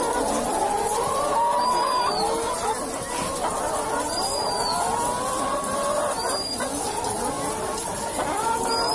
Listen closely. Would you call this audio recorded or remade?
recorded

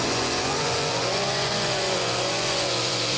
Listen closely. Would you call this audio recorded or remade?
remade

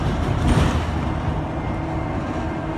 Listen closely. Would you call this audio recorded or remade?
recorded